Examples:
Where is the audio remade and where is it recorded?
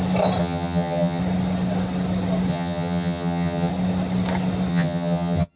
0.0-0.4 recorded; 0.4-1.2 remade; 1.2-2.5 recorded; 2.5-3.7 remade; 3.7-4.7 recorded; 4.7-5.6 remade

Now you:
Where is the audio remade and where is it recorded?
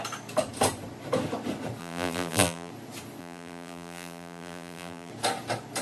0.0-1.8 recorded; 1.8-2.7 remade; 2.7-3.2 recorded; 3.2-5.1 remade; 5.1-5.8 recorded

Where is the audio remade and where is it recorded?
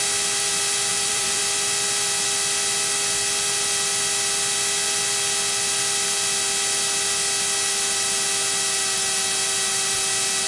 0.0-0.9 recorded; 0.9-1.4 remade; 1.4-10.5 recorded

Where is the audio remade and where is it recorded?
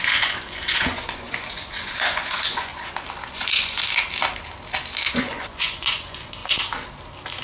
0.0-2.7 remade; 2.7-3.3 recorded; 3.3-3.8 remade; 3.8-5.1 recorded; 5.1-6.4 remade; 6.4-7.4 recorded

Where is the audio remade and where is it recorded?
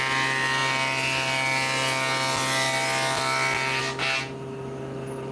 0.0-5.3 recorded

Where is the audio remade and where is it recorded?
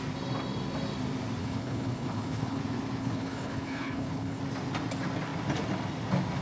0.0-1.4 recorded; 1.4-2.6 remade; 2.6-3.0 recorded; 3.0-4.4 remade; 4.4-6.4 recorded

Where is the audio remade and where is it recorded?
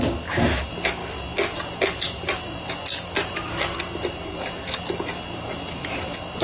0.0-6.4 recorded